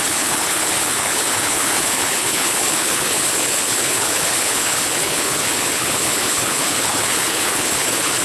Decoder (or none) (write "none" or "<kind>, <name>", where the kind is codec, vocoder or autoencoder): codec, HILCodec